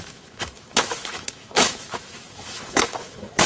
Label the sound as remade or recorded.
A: remade